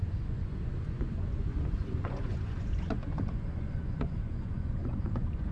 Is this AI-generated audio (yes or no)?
yes